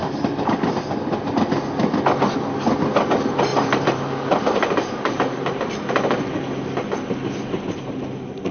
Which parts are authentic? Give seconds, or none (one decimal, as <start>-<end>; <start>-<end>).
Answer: 0.0-3.5; 6.2-8.5